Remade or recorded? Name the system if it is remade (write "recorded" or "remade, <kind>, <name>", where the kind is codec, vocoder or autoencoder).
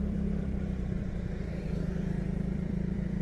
remade, vocoder, BigVGAN v2